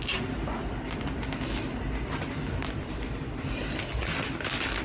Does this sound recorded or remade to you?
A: recorded